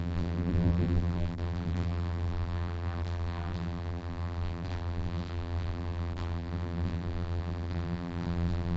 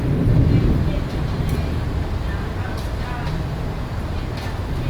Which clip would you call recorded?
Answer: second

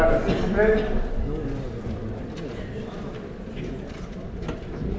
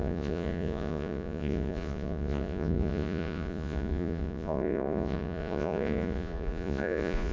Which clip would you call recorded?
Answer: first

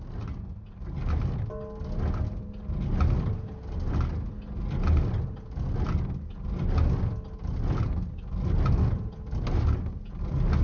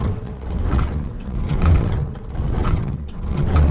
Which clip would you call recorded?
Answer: first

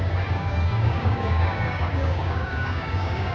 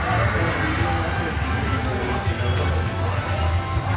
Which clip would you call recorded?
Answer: second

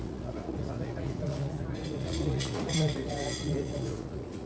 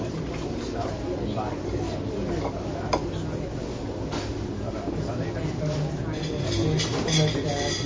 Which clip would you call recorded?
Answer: second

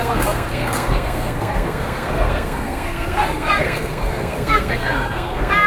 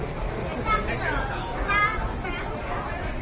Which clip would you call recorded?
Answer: second